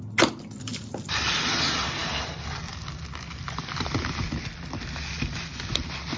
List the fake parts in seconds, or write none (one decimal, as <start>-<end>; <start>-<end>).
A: none

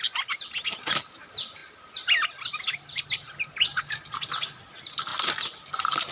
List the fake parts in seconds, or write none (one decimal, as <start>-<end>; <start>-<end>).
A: none

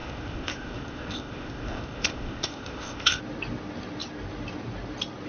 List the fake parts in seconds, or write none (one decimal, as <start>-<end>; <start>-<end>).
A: 0.0-3.2